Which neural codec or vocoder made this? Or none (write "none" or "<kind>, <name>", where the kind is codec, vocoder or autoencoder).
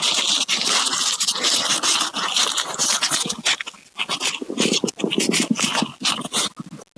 none